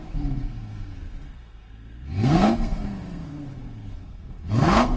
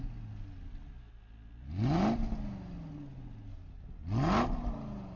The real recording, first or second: second